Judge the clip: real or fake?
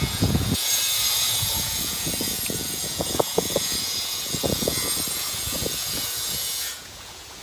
fake